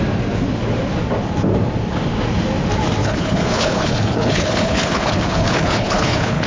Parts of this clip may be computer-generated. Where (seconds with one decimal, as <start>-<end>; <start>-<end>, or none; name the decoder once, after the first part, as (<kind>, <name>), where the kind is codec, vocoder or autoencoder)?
3.0-6.5 (codec, HILCodec)